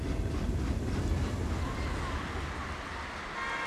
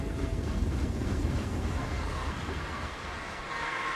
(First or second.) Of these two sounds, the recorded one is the first